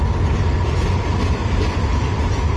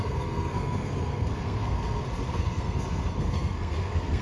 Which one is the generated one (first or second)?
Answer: second